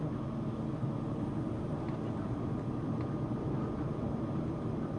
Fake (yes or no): no